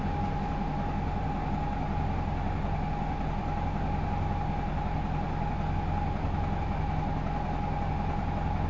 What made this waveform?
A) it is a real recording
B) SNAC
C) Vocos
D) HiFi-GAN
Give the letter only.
A